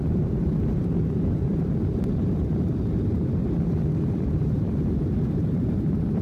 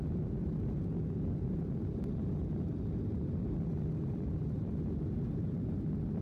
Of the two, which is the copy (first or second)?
first